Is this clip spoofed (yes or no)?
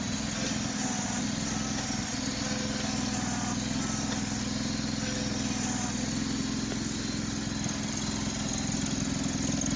no